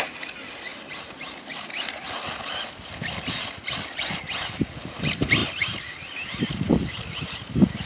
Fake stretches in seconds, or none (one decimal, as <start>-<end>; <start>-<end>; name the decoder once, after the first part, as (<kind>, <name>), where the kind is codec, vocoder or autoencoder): none